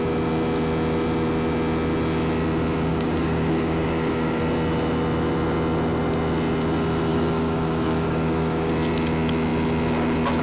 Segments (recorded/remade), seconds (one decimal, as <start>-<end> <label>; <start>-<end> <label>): 0.0-2.9 recorded; 2.9-4.4 remade; 4.4-7.1 recorded; 7.1-8.7 remade; 8.7-10.4 recorded